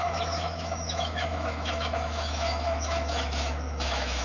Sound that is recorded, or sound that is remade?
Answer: remade